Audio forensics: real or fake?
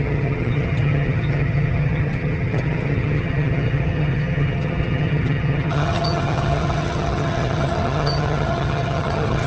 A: fake